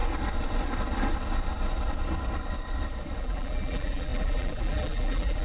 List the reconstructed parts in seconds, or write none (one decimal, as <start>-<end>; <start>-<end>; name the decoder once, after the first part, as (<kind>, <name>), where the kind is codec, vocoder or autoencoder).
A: 3.2-5.4 (vocoder, BigVGAN v2)